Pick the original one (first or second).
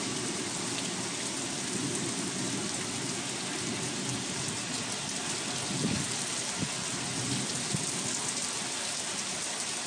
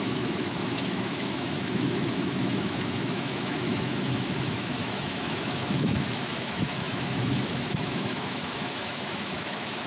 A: first